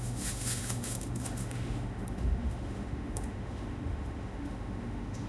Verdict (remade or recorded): remade